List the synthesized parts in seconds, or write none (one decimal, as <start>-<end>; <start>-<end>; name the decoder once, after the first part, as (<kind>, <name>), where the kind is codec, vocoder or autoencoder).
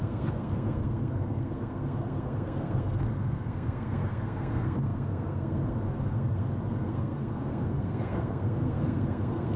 0.0-9.6 (codec, SNAC)